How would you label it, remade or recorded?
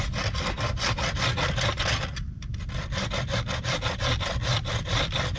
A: recorded